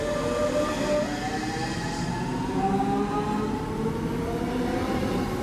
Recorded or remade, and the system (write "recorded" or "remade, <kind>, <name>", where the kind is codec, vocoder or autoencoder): recorded